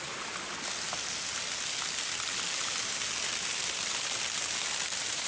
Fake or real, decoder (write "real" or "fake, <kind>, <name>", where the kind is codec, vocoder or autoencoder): real